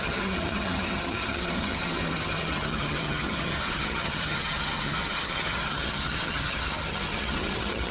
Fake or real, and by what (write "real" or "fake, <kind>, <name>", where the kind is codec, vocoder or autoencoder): fake, vocoder, HiFi-GAN